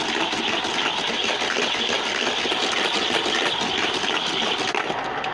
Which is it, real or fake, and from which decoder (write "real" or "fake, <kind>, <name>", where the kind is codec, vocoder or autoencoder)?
real